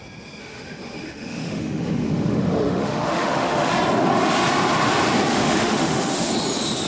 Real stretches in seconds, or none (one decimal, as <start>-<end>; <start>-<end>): 0.0-0.4; 3.7-5.3; 6.3-6.9